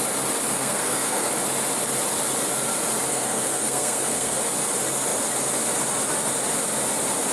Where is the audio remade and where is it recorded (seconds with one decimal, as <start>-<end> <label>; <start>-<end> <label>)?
0.0-0.5 recorded; 0.5-1.3 remade; 1.3-3.1 recorded; 3.1-4.4 remade; 4.4-7.3 recorded